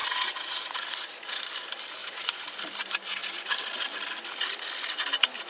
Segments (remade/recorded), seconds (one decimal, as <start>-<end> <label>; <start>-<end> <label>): 0.0-1.4 remade; 1.4-2.0 recorded; 2.0-2.6 remade; 2.6-5.5 recorded